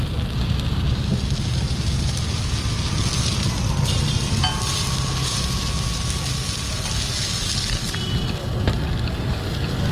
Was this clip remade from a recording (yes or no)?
no